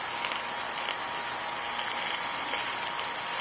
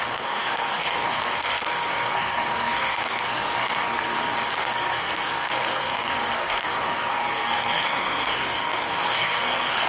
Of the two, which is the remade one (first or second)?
second